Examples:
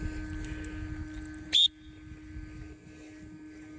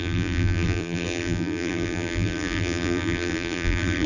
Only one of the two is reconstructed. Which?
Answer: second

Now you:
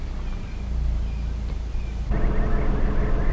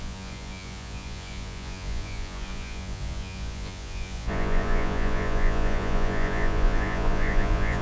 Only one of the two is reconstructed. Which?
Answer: second